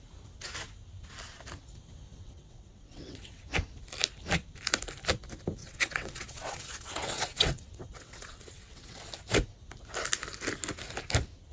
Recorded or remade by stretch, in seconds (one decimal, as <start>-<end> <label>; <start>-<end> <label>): 0.0-2.1 recorded; 2.1-3.4 remade; 3.4-5.6 recorded; 5.6-9.0 remade; 9.0-11.5 recorded